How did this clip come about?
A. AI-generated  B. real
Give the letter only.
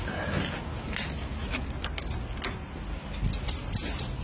B